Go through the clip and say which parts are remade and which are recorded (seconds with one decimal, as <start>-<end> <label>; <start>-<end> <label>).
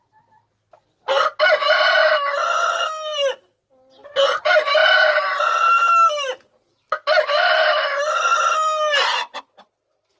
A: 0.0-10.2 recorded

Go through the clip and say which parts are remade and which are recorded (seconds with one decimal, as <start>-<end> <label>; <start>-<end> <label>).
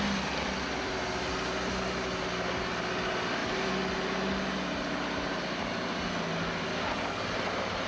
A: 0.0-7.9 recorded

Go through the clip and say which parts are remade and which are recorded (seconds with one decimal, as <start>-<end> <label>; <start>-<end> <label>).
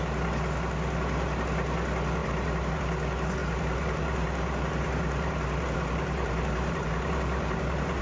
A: 0.0-2.2 recorded; 2.2-2.8 remade; 2.8-3.4 recorded; 3.4-8.0 remade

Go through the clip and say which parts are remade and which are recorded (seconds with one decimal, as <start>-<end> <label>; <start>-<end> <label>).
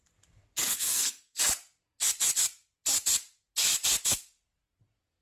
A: 0.0-0.6 recorded; 0.6-1.4 remade; 1.4-5.2 recorded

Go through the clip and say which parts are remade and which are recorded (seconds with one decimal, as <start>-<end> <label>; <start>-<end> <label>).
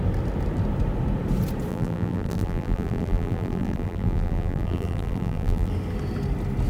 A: 0.0-1.7 recorded; 1.7-5.7 remade; 5.7-6.7 recorded